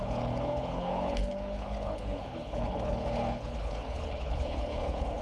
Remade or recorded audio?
remade